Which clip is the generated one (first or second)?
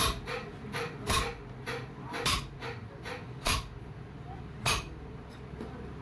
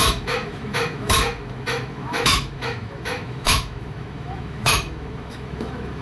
second